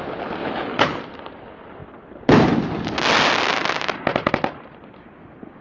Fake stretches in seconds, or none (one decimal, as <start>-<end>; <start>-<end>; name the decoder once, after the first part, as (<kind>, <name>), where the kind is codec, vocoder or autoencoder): 0.4-1.0 (codec, HILCodec)